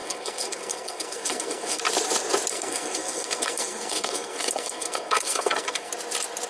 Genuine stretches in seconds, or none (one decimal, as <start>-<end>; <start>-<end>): 1.8-2.5; 5.9-6.5